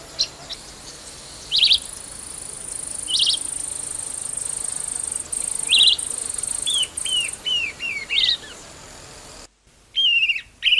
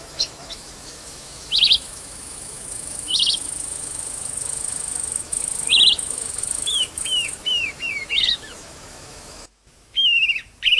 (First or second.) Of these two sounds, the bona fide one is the first